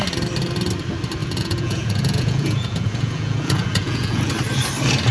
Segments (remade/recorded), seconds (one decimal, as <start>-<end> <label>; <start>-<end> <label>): 0.0-1.2 recorded; 1.2-4.3 remade; 4.3-5.1 recorded